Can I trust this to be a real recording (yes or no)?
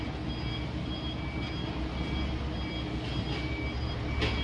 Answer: yes